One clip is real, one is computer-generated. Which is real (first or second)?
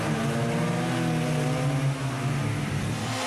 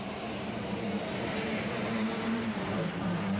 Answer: first